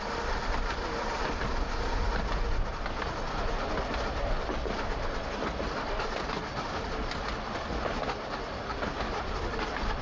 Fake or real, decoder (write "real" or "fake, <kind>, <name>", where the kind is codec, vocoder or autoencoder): real